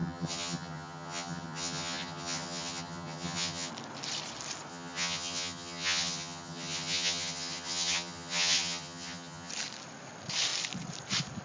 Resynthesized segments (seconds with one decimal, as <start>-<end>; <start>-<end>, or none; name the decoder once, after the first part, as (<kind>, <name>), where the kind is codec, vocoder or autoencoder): 0.0-3.7 (vocoder, HiFi-GAN); 4.7-9.5

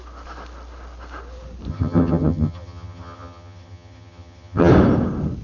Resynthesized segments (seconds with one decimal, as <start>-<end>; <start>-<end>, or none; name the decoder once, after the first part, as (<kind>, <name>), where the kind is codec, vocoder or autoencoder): 1.7-4.7 (vocoder, HiFi-GAN)

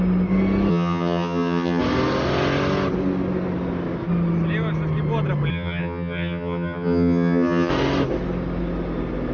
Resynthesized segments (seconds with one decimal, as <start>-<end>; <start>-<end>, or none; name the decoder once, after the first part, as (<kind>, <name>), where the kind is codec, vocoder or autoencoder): 0.7-1.8 (vocoder, HiFi-GAN); 5.5-7.7

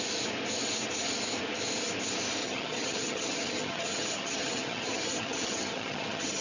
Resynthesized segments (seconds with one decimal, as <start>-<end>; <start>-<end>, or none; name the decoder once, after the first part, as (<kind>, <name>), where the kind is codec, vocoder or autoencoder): 2.4-6.4 (vocoder, HiFi-GAN)

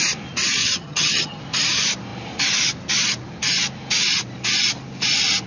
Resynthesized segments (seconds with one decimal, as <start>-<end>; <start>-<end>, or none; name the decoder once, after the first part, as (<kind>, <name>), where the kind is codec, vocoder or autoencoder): 0.6-1.4 (vocoder, HiFi-GAN)